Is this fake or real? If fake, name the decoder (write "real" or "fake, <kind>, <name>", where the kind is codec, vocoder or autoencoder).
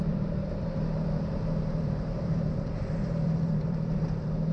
fake, vocoder, BigVGAN v2